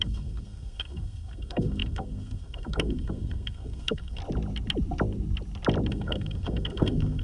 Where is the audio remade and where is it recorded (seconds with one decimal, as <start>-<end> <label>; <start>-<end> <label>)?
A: 0.0-4.2 remade; 4.2-5.9 recorded; 5.9-7.2 remade